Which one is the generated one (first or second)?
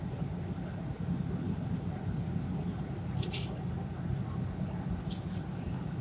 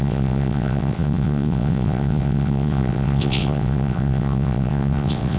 second